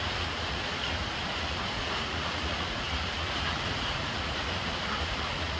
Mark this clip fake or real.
fake